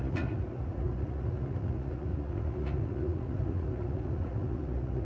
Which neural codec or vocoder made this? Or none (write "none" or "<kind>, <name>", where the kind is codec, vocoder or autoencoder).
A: vocoder, Vocos